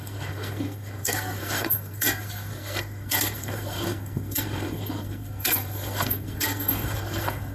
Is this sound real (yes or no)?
no